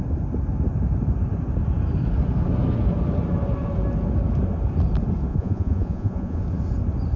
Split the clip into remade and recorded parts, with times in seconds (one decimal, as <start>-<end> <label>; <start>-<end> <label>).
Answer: 0.0-5.3 recorded; 5.3-6.4 remade; 6.4-7.2 recorded